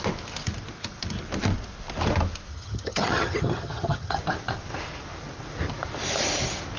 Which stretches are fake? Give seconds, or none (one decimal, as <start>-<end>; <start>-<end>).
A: 2.5-4.2